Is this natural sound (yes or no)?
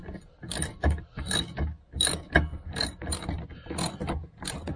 yes